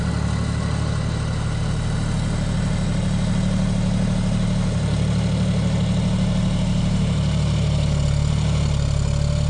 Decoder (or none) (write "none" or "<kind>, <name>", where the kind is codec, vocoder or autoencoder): none